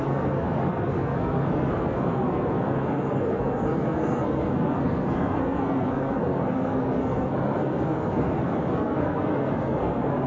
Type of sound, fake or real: fake